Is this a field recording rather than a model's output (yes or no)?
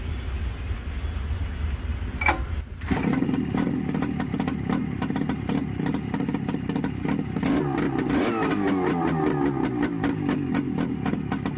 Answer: yes